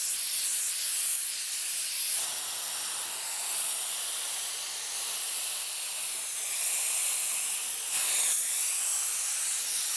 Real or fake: real